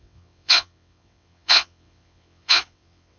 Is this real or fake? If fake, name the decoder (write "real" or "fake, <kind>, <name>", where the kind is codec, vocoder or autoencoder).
fake, vocoder, WaveNeXt